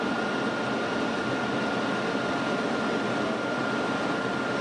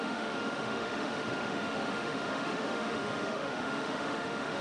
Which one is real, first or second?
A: first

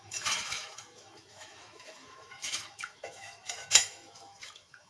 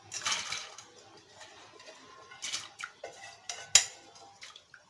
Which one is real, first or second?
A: second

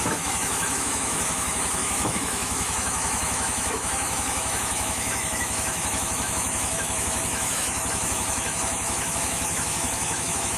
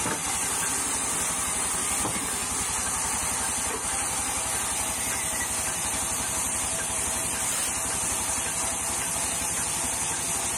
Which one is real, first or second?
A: second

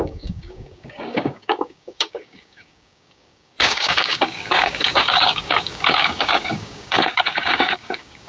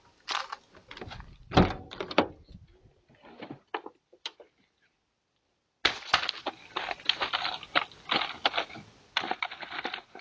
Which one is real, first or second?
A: second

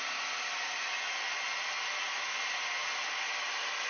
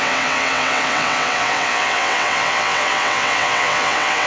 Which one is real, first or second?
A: first